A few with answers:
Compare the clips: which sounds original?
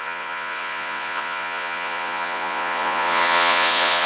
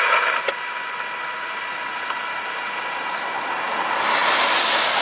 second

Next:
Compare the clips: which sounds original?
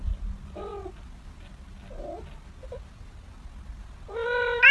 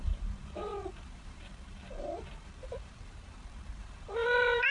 first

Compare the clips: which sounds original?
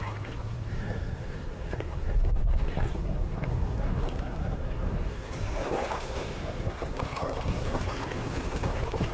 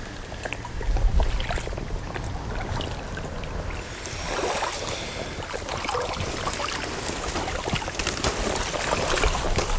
second